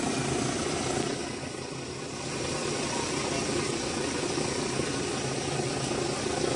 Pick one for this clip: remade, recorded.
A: recorded